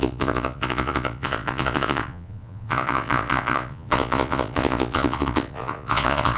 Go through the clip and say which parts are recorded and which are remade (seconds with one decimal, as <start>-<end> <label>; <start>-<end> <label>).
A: 0.0-6.4 remade